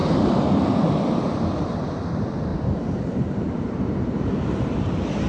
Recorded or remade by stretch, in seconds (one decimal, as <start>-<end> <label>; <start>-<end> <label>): 0.0-2.5 recorded; 2.5-4.8 remade; 4.8-5.3 recorded